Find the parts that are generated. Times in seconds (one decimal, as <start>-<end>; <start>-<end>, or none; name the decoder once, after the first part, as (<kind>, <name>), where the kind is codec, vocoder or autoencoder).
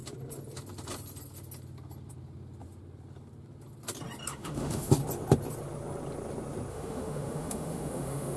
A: 4.3-4.9 (autoencoder, DAC-VAE); 6.7-8.4